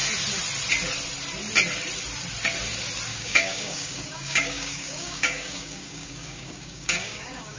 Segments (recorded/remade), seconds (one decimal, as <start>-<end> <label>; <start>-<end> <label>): 0.0-3.1 recorded; 3.1-7.6 remade